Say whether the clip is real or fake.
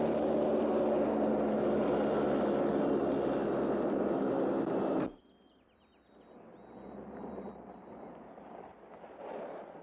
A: real